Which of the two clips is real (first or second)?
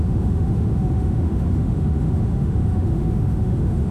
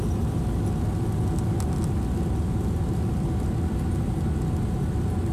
second